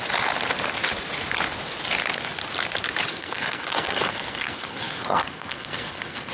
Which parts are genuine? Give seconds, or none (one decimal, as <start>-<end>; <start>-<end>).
0.0-3.1